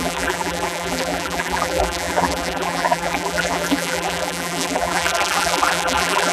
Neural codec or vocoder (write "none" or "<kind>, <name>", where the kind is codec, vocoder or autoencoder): vocoder, BigVGAN v2